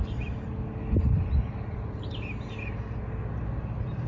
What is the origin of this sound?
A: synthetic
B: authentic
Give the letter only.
B